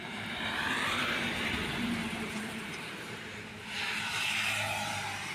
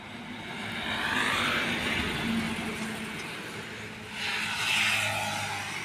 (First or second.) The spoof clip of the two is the first